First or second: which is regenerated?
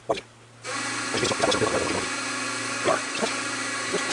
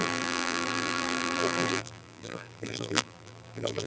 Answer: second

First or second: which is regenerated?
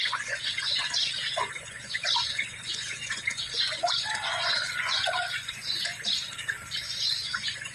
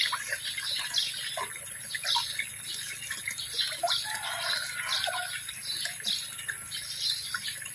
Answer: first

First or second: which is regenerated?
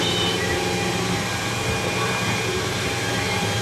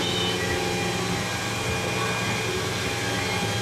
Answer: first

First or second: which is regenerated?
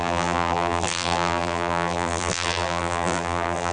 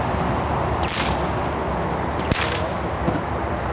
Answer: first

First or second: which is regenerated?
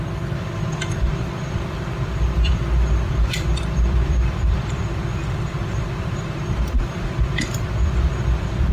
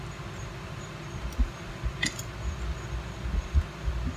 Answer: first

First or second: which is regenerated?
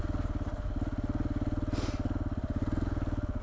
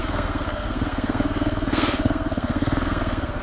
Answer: second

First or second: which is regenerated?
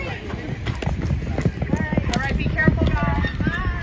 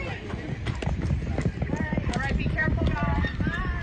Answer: second